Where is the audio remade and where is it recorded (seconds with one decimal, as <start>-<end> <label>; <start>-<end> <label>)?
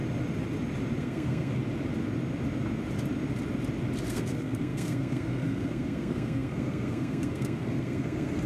0.0-1.0 recorded; 1.0-1.6 remade; 1.6-4.1 recorded; 4.1-8.5 remade